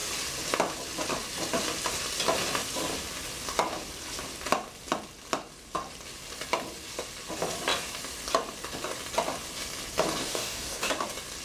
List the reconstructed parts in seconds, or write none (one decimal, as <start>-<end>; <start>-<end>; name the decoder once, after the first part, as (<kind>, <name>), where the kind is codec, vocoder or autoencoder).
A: 10.2-10.9 (codec, DAC)